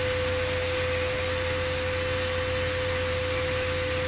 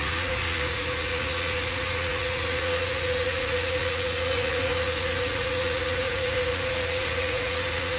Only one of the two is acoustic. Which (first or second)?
first